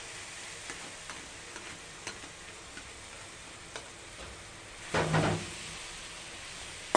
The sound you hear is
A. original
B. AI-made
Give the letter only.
A